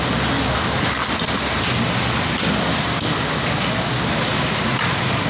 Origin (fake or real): real